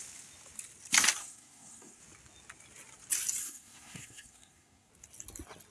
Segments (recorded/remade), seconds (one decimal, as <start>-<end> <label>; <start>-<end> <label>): 0.0-1.2 recorded; 1.2-2.0 remade; 2.0-3.4 recorded; 3.4-4.9 remade; 4.9-5.7 recorded